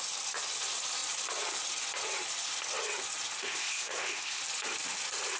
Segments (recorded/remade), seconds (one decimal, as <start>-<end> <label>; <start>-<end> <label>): 0.0-3.4 recorded; 3.4-4.4 remade; 4.4-5.4 recorded